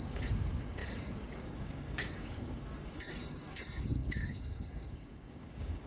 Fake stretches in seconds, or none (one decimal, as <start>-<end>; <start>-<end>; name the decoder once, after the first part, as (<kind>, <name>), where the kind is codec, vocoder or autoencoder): 0.0-5.9 (codec, DAC)